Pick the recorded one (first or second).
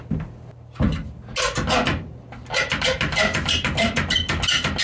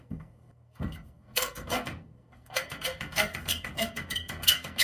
first